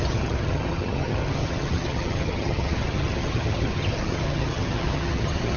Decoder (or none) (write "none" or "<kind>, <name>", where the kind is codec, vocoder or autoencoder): vocoder, HiFi-GAN